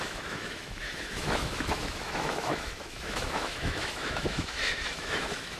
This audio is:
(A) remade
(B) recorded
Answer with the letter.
A